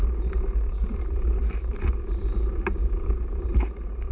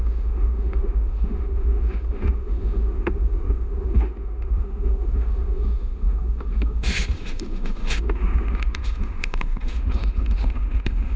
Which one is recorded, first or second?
first